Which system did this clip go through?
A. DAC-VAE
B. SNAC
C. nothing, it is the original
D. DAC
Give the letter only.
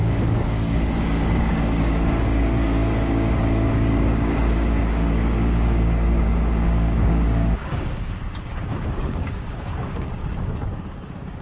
D